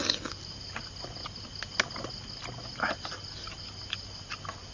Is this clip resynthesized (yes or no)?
no